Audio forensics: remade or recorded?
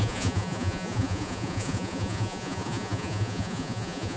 remade